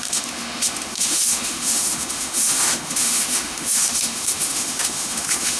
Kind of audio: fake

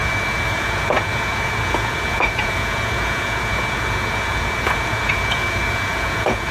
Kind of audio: fake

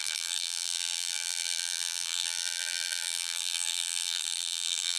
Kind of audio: fake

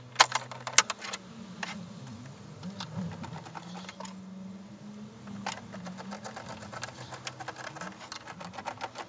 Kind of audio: real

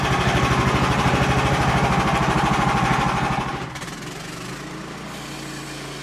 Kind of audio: real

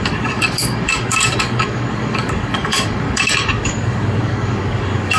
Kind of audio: fake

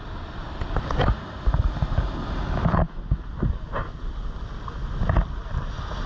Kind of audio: real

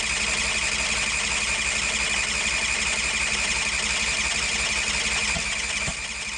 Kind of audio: real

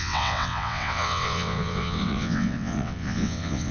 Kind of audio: fake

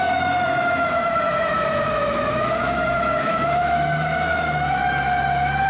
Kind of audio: fake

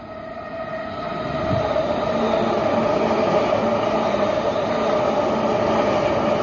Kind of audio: real